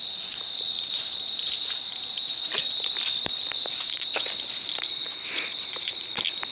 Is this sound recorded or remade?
remade